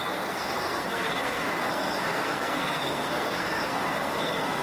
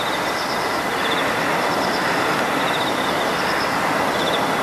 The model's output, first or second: first